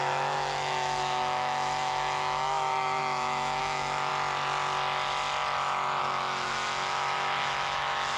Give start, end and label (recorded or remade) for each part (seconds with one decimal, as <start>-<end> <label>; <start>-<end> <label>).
0.0-4.1 remade; 4.1-6.0 recorded; 6.0-8.2 remade